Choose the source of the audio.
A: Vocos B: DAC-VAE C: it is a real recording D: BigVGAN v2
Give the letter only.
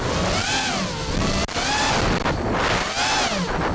C